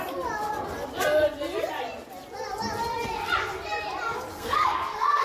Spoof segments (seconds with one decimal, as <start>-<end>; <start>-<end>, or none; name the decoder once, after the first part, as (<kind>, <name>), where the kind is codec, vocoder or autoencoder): 4.3-5.2 (codec, SNAC)